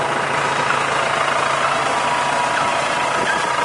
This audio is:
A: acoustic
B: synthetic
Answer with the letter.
A